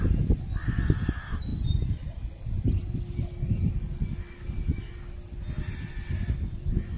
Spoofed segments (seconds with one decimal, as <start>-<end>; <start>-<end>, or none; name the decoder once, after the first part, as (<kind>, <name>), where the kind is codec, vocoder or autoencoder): none